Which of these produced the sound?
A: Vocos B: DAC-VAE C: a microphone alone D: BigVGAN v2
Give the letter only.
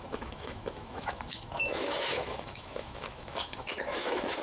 B